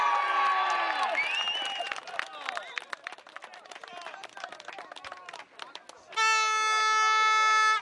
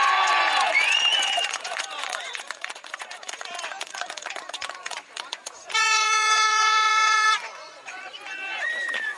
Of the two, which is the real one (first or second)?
first